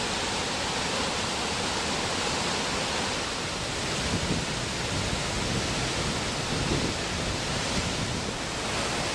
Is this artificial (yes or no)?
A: no